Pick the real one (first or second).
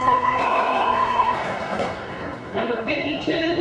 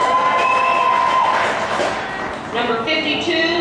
second